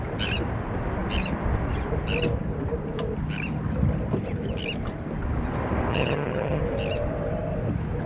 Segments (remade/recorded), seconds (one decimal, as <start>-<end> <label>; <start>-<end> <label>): 0.0-5.9 recorded; 5.9-6.6 remade; 6.6-8.1 recorded

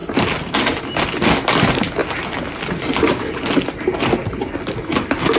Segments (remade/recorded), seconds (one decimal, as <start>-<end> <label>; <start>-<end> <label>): 0.0-5.4 recorded

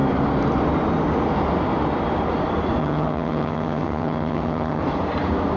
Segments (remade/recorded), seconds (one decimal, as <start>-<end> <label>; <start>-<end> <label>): 0.0-2.8 recorded; 2.8-4.8 remade; 4.8-5.6 recorded

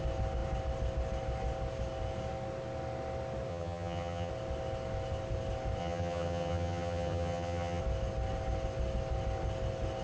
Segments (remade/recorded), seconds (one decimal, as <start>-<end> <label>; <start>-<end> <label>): 0.0-3.5 recorded; 3.5-4.3 remade; 4.3-5.8 recorded; 5.8-7.8 remade; 7.8-10.0 recorded

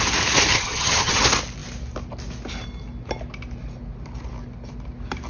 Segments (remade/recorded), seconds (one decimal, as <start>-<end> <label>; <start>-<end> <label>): 0.0-0.5 recorded; 0.5-1.2 remade; 1.2-5.3 recorded

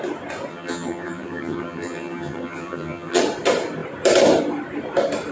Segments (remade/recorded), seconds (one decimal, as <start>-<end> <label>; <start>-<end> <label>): 0.0-0.5 recorded; 0.5-3.2 remade; 3.2-5.3 recorded

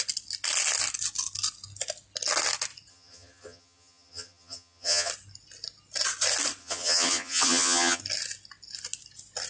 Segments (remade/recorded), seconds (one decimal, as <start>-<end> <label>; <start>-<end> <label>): 0.0-2.9 recorded; 2.9-5.1 remade; 5.1-6.6 recorded; 6.6-8.0 remade; 8.0-9.5 recorded